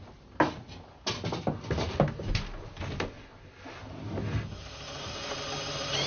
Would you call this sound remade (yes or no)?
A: no